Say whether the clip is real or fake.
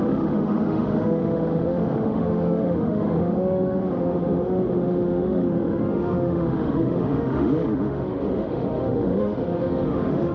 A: fake